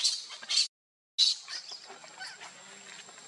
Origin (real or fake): real